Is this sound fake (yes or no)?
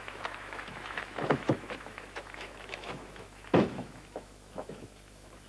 yes